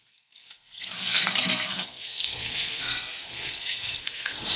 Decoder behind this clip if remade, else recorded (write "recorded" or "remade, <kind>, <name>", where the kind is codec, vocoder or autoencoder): remade, codec, SNAC